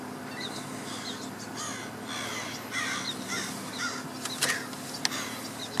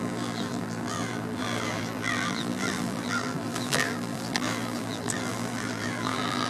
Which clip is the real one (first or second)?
first